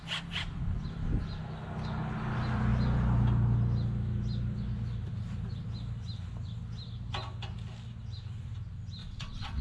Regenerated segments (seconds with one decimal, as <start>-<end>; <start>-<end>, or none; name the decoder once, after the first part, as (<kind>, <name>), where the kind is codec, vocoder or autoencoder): 9.0-9.6 (vocoder, WaveNeXt)